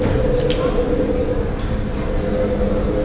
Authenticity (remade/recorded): recorded